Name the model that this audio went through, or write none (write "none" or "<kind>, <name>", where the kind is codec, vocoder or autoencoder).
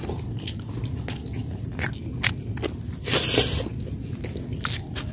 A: none